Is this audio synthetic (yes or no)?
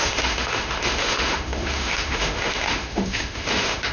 yes